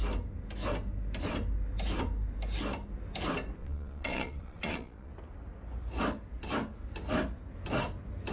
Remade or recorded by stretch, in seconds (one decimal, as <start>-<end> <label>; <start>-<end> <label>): 0.0-3.6 recorded; 3.6-5.1 remade; 5.1-8.3 recorded

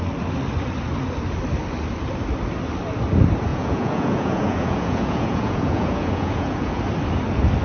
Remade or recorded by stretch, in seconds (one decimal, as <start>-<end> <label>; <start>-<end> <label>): 0.0-3.5 recorded; 3.5-6.8 remade; 6.8-7.6 recorded

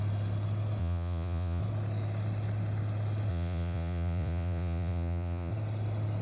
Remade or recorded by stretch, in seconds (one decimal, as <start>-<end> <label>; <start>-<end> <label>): 0.0-0.8 recorded; 0.8-1.6 remade; 1.6-3.3 recorded; 3.3-5.5 remade; 5.5-6.2 recorded

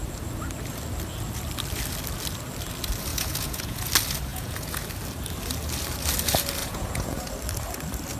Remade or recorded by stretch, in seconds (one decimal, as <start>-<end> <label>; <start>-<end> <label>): 0.0-3.1 recorded; 3.1-3.9 remade; 3.9-4.3 recorded; 4.3-4.8 remade; 4.8-6.6 recorded; 6.6-7.3 remade; 7.3-8.2 recorded

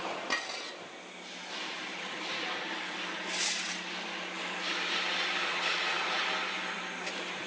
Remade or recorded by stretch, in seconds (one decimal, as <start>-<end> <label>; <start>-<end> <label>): 0.0-5.4 recorded; 5.4-6.2 remade; 6.2-7.5 recorded

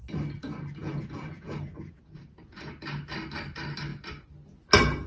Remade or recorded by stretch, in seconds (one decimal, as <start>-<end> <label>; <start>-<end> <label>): 0.0-0.8 recorded; 0.8-2.7 remade; 2.7-5.1 recorded

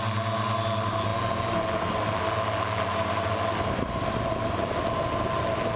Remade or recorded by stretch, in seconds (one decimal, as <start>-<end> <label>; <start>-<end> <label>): 0.0-5.8 recorded